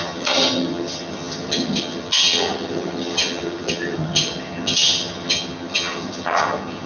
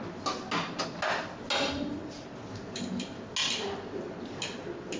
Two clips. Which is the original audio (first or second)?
second